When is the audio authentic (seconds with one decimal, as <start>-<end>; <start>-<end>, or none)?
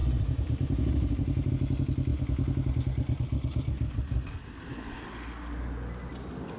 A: 1.5-6.6